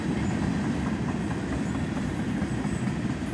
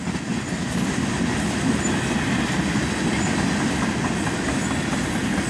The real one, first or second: second